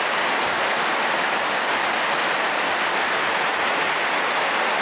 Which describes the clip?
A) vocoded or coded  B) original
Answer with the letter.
B